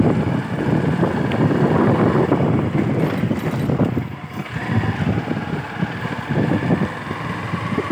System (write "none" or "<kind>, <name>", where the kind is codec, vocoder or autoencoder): none